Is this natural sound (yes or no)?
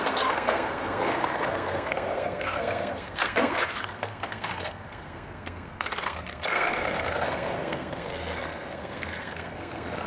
no